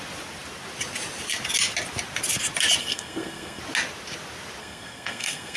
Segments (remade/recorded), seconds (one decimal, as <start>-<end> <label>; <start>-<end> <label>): 0.0-2.8 recorded; 2.8-3.6 remade; 3.6-4.6 recorded; 4.6-5.6 remade